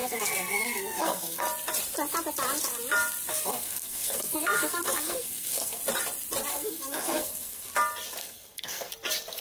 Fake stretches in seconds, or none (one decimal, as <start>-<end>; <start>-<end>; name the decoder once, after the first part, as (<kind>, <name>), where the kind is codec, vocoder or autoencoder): 0.0-1.4 (codec, SNAC); 3.3-5.8; 6.5-7.7; 8.2-8.9